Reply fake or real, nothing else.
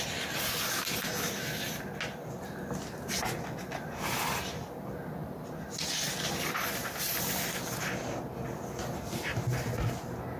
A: real